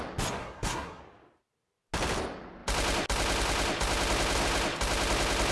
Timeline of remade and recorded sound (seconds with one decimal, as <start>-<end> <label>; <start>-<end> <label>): 0.0-0.4 recorded; 0.4-1.0 remade; 1.0-5.5 recorded